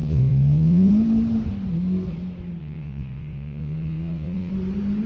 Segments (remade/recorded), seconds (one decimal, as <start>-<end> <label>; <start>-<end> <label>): 0.0-0.9 remade; 0.9-2.6 recorded; 2.6-4.5 remade; 4.5-5.1 recorded